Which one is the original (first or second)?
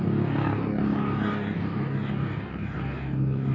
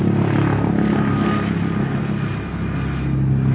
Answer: second